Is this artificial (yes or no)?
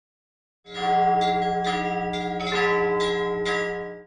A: no